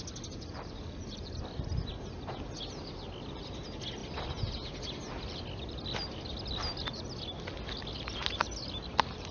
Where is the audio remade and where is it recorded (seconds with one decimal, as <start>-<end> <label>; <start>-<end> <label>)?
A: 0.0-9.3 recorded